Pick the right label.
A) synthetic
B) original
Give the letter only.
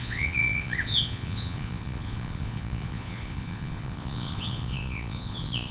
A